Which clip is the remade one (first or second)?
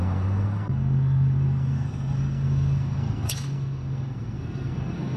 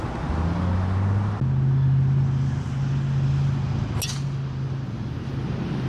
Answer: first